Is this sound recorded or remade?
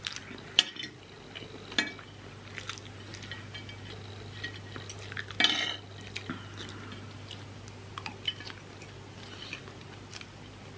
recorded